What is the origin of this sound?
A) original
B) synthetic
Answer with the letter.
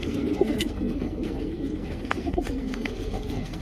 B